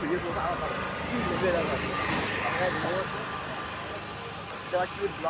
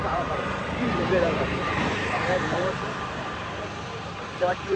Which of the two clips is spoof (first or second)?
second